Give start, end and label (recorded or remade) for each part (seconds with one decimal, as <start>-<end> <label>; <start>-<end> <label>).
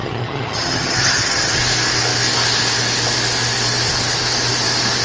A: 0.0-1.5 remade; 1.5-5.0 recorded